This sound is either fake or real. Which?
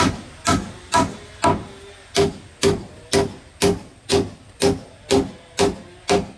real